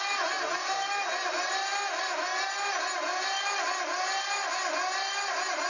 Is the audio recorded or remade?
recorded